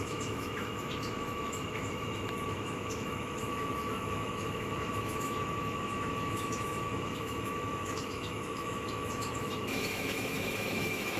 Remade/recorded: remade